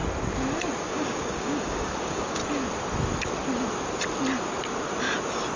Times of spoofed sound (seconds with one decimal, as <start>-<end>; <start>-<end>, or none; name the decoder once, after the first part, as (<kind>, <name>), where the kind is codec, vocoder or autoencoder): 0.9-2.4 (codec, DAC)